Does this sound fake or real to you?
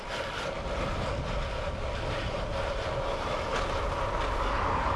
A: real